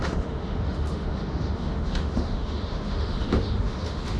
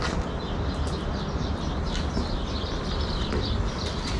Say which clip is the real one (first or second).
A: second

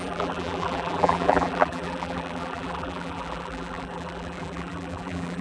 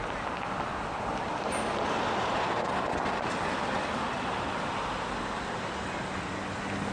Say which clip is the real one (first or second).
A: second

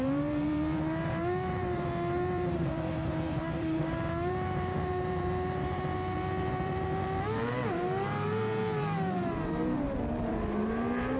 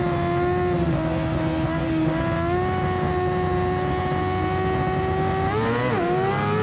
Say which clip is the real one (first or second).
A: second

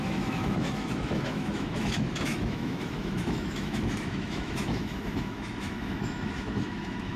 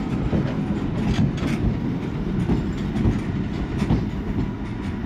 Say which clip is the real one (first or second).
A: second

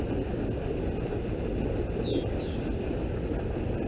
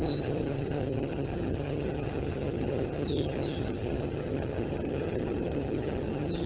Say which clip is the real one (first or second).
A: first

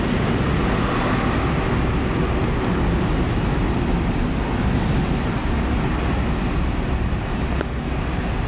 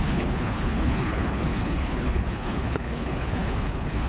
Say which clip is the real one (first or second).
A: first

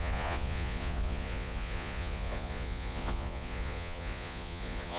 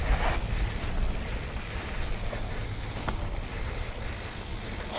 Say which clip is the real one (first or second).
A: second